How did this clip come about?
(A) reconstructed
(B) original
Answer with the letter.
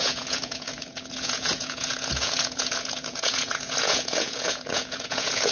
A